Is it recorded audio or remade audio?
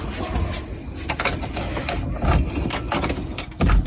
recorded